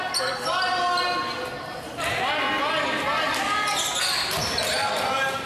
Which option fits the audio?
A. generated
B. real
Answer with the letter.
B